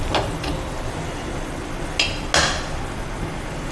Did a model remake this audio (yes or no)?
no